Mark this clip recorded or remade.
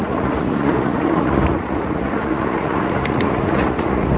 remade